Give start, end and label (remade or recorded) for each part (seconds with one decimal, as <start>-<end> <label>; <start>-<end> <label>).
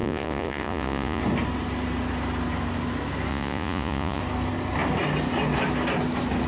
0.0-1.2 remade; 1.2-3.3 recorded; 3.3-4.2 remade; 4.2-6.5 recorded